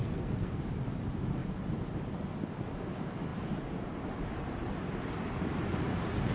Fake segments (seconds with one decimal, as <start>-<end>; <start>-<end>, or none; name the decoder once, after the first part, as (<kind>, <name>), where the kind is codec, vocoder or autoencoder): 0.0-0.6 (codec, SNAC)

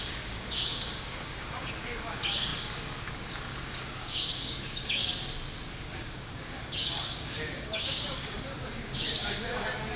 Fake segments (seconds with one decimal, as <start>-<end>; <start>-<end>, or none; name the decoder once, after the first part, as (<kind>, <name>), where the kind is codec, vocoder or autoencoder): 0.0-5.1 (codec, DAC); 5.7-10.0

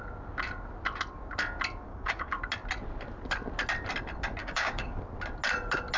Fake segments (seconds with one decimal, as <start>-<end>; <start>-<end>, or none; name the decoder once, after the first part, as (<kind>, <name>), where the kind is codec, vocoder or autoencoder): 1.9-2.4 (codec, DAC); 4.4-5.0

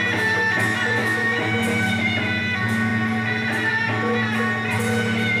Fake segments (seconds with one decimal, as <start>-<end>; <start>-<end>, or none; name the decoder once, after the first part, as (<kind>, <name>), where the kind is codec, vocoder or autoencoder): 1.0-1.6 (autoencoder, DAC-VAE)

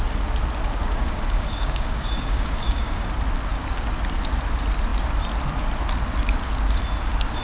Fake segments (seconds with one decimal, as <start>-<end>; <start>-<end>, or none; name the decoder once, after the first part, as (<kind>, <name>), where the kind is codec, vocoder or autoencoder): 0.8-3.1 (codec, DAC)

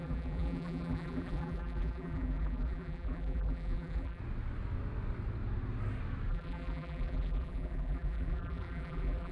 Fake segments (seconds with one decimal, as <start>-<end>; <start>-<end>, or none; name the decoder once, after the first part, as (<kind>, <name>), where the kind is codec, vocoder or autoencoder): 0.0-4.2 (vocoder, BigVGAN v2); 6.3-9.3

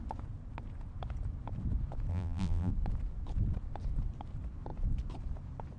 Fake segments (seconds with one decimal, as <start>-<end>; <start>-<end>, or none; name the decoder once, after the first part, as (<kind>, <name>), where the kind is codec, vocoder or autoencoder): 2.1-2.7 (vocoder, BigVGAN v2)